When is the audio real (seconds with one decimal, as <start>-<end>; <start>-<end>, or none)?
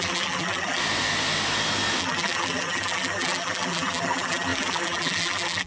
0.8-2.0